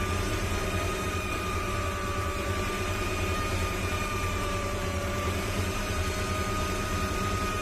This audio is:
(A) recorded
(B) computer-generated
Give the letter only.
B